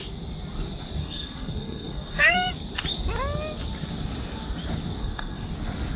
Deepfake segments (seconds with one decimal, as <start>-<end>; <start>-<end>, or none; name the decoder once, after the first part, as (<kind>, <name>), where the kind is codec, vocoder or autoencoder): 1.0-2.5 (codec, SNAC); 5.0-5.5